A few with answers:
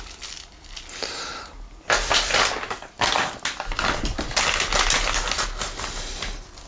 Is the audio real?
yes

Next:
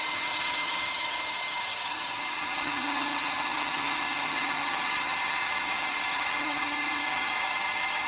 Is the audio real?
no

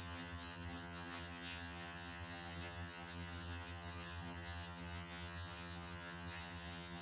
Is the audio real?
no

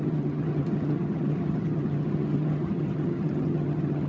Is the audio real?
no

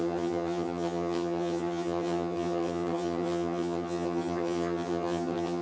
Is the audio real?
no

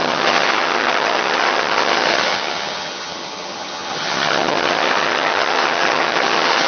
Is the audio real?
no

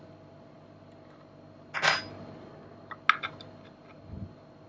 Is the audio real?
yes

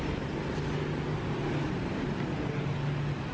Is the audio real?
yes